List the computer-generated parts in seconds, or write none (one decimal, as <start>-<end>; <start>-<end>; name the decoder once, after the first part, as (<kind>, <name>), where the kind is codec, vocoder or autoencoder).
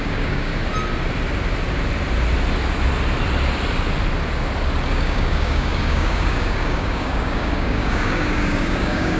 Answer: 0.0-0.5 (codec, DAC); 4.9-9.2